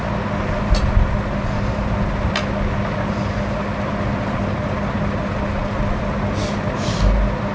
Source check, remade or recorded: recorded